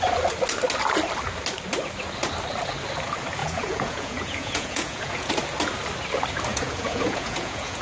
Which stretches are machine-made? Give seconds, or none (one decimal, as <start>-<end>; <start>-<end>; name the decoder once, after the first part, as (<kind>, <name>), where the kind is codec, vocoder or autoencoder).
3.4-5.3 (vocoder, Vocos); 6.5-7.8